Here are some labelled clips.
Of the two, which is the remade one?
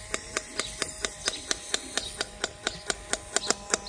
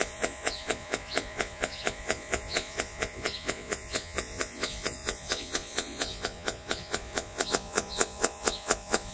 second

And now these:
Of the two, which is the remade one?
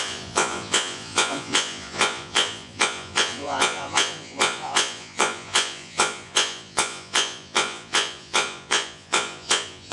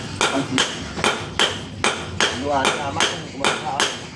first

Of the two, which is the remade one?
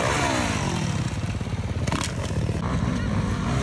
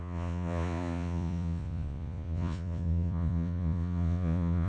second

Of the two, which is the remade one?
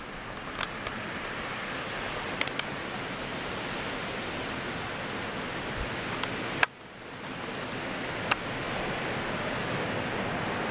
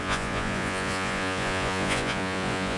second